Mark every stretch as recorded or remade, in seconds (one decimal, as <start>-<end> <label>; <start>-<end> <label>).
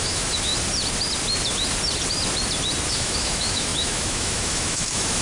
0.0-0.5 remade; 0.5-2.9 recorded; 2.9-5.2 remade